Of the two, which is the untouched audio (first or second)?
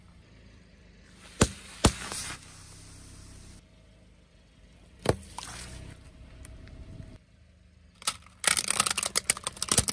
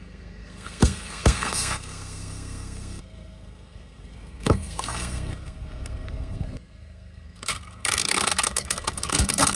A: first